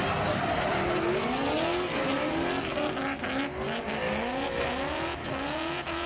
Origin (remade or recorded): recorded